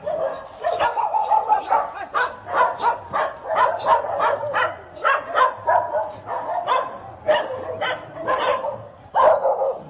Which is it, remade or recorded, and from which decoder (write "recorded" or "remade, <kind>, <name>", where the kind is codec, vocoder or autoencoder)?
recorded